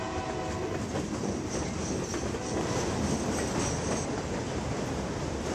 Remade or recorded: recorded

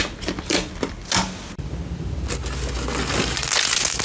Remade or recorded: recorded